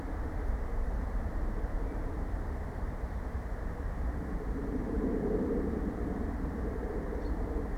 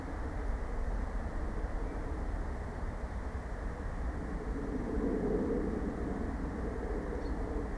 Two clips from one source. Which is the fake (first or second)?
first